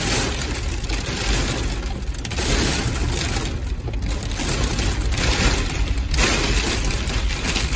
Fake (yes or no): no